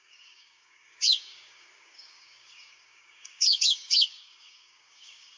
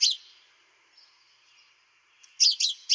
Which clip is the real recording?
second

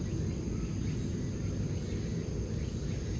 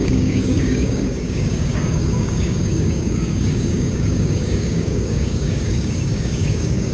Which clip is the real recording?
first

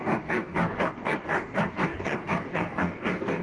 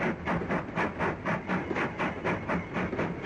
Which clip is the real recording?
second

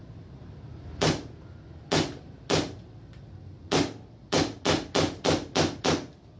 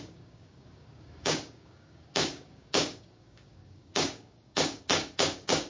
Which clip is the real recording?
first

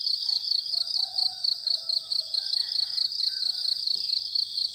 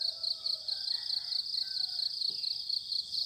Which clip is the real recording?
second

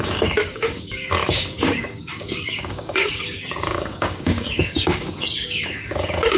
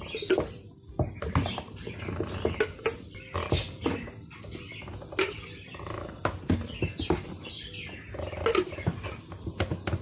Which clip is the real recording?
second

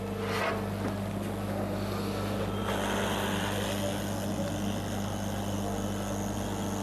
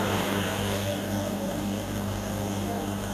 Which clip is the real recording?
first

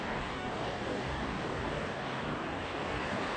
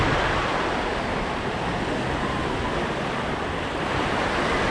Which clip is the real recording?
second